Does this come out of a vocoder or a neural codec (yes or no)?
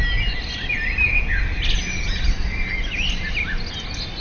no